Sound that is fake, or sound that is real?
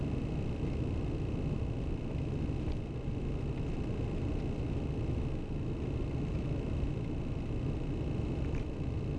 real